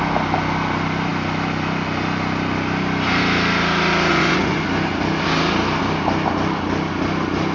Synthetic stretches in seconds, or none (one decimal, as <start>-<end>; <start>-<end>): 4.1-4.6